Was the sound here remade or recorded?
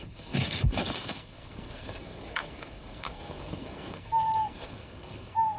remade